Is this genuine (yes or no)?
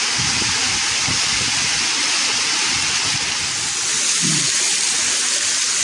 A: yes